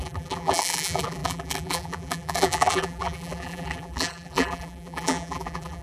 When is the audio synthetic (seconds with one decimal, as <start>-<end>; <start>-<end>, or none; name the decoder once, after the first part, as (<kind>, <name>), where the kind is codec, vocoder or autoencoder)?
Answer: 0.0-5.8 (vocoder, BigVGAN v2)